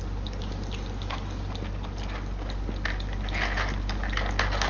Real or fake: real